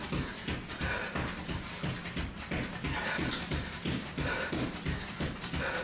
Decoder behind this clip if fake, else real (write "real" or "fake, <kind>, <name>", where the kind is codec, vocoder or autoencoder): real